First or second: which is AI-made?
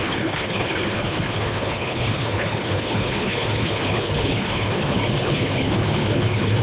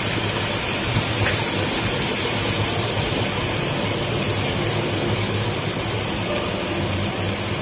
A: first